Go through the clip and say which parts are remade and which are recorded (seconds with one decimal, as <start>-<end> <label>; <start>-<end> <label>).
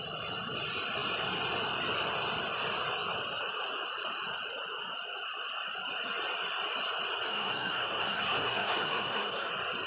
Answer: 0.0-7.3 recorded; 7.3-9.5 remade; 9.5-9.9 recorded